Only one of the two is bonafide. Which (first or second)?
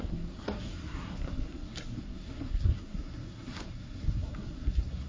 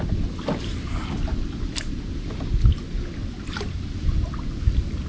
second